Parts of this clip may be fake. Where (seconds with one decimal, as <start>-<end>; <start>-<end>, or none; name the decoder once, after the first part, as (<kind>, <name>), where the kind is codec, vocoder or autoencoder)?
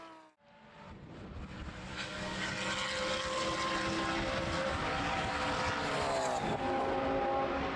1.9-2.5 (codec, DAC); 4.7-5.3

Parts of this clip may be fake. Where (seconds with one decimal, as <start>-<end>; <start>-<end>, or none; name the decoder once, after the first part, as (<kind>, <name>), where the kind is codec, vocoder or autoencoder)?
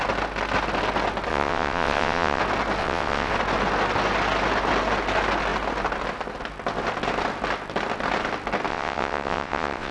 1.3-2.4 (vocoder, WaveNeXt); 2.8-3.3; 8.7-9.9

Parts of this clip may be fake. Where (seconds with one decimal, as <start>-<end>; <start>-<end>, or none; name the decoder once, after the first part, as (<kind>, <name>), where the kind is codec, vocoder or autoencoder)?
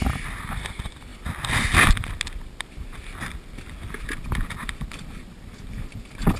none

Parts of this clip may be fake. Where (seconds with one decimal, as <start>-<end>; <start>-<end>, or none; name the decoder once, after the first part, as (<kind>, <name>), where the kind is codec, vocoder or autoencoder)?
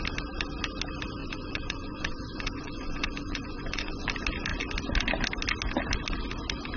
1.2-4.1 (vocoder, Vocos)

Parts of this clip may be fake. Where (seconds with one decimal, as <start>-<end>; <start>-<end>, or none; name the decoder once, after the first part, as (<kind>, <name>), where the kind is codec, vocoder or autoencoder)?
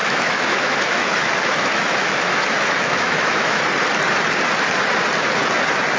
0.0-3.6 (autoencoder, DAC-VAE)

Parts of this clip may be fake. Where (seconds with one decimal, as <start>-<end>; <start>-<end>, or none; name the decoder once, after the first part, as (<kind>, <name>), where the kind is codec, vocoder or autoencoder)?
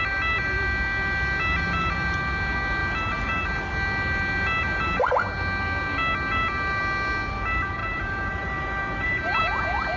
7.8-9.4 (vocoder, BigVGAN v2)